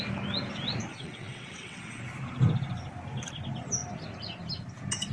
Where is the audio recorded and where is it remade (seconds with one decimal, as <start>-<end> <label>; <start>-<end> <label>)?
0.0-0.9 recorded; 0.9-2.0 remade; 2.0-5.1 recorded